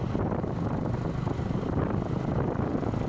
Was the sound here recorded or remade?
recorded